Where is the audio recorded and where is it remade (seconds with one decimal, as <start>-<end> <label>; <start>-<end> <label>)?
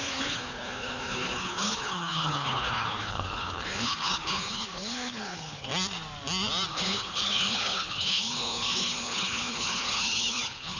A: 0.0-5.7 remade; 5.7-6.7 recorded; 6.7-10.8 remade